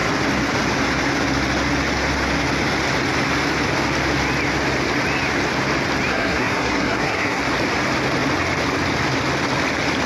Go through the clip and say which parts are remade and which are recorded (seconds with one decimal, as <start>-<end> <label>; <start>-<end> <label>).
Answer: 0.0-6.1 recorded; 6.1-7.4 remade; 7.4-10.1 recorded